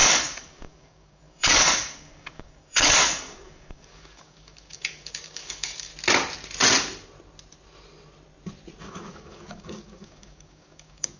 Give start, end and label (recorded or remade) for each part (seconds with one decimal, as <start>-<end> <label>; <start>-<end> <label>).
0.0-5.9 remade; 5.9-8.8 recorded; 8.8-11.2 remade